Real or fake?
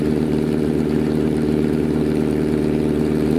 fake